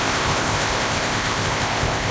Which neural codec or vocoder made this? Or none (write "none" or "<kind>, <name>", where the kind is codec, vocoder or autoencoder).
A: codec, ZipCodec